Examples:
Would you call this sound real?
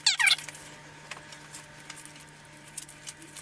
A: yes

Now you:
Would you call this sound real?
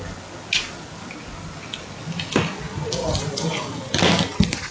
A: yes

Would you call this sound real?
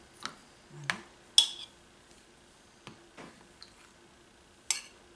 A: yes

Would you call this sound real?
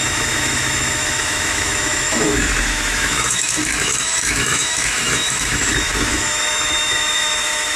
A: no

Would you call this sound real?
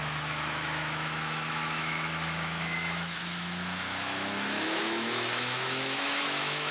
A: no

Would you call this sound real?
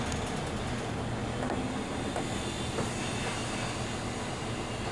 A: yes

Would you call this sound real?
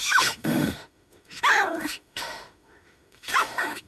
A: no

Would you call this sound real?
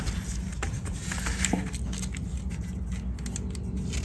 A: yes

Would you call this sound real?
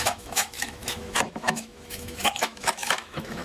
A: no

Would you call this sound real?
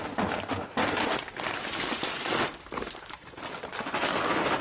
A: yes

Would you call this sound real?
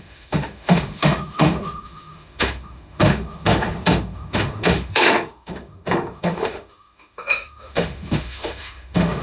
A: no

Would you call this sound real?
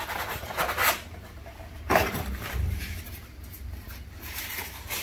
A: yes